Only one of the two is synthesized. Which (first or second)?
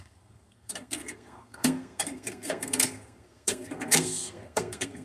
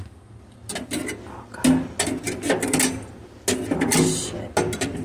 first